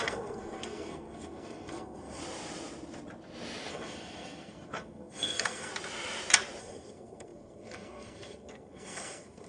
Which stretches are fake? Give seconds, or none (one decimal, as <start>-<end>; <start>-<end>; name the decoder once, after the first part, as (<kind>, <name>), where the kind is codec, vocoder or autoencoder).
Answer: 0.0-2.2 (codec, SNAC); 3.7-5.7; 6.6-9.5